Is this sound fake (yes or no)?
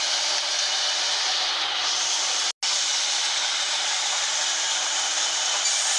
no